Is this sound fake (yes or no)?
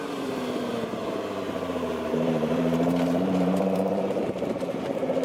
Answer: yes